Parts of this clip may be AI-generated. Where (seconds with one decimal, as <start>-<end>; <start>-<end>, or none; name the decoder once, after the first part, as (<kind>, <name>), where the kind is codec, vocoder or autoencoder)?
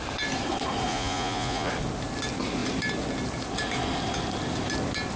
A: 0.9-1.7 (vocoder, Vocos)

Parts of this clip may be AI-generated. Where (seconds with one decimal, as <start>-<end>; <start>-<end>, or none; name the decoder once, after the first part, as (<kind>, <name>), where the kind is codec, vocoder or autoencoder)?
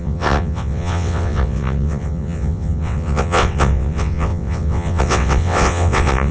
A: 0.0-6.3 (vocoder, WaveNeXt)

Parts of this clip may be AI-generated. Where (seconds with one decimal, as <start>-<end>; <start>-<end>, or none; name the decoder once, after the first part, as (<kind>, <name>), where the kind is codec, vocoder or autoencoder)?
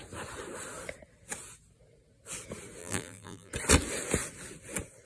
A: 2.8-3.5 (vocoder, BigVGAN v2)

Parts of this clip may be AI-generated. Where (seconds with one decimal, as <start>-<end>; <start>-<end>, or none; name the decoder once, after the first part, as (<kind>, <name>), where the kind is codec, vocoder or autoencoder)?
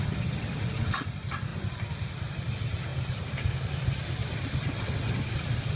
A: 2.9-3.5 (vocoder, BigVGAN v2)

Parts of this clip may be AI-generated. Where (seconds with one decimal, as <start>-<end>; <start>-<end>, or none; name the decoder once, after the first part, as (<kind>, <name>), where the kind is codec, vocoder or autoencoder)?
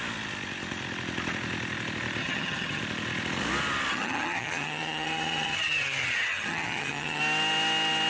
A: 2.2-2.8 (vocoder, HiFi-GAN); 3.9-7.2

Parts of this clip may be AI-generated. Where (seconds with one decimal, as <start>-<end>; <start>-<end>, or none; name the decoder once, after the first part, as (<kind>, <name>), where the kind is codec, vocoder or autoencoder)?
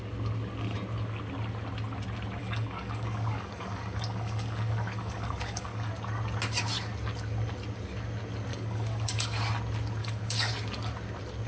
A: 2.4-5.9 (codec, DAC); 8.5-9.4; 10.0-10.5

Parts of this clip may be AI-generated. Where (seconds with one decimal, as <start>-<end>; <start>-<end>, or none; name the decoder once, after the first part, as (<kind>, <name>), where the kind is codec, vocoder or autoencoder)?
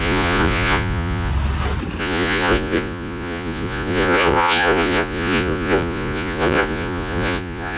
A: 0.0-1.3 (vocoder, Vocos); 2.0-7.8